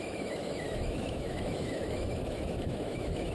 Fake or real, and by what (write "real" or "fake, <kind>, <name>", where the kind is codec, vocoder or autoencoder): fake, autoencoder, DAC-VAE